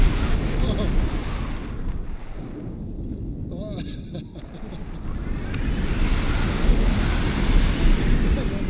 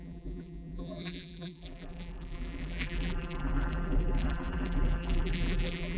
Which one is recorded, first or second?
first